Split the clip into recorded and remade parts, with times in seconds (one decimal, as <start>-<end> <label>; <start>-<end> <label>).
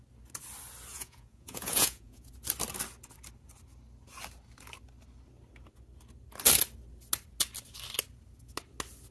0.0-0.9 recorded; 0.9-2.3 remade; 2.3-9.1 recorded